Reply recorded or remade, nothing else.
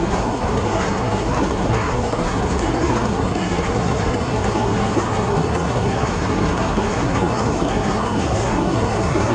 remade